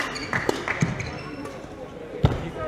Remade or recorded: recorded